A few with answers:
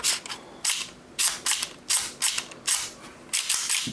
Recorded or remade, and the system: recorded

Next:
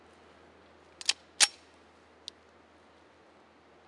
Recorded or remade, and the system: recorded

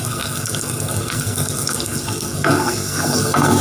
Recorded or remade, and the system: remade, codec, SNAC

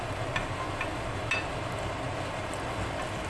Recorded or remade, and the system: recorded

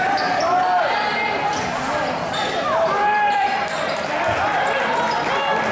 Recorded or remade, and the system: recorded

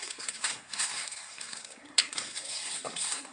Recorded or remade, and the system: remade, codec, SNAC